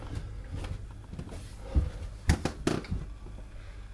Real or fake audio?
real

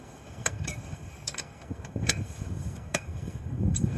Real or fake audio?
fake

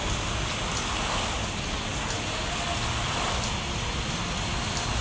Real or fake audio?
real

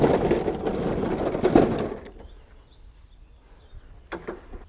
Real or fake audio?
real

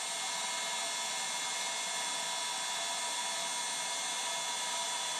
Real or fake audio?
real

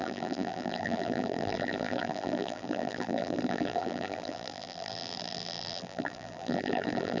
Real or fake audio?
fake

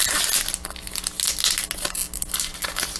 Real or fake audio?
real